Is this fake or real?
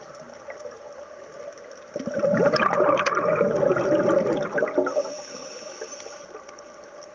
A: real